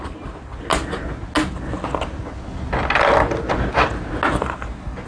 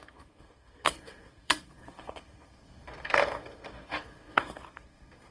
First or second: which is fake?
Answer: second